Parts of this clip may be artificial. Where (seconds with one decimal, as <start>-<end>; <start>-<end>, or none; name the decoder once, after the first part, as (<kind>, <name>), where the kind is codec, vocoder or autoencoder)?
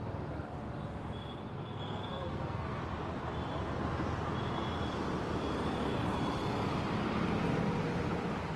1.5-2.8 (codec, SNAC)